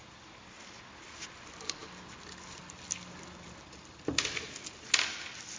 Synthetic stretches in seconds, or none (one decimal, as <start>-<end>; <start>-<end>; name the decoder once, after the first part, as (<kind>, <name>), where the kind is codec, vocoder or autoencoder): none